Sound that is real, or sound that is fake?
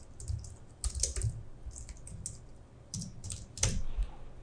real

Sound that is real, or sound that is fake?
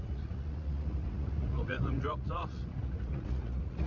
fake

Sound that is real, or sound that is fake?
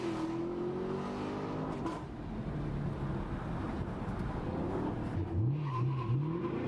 real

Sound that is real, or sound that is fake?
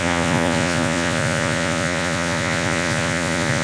fake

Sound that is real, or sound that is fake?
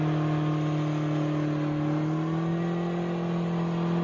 real